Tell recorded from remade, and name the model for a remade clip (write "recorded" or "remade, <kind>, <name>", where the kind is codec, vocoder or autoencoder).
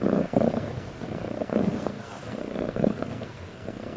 remade, codec, SNAC